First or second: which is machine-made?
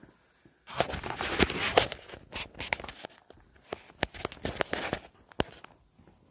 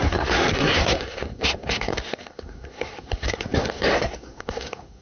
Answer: second